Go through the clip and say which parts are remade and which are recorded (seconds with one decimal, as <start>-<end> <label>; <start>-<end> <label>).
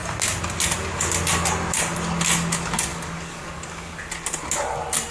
0.0-2.9 recorded; 2.9-4.0 remade; 4.0-5.1 recorded